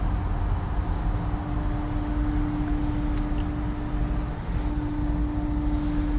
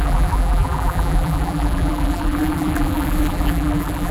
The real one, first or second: first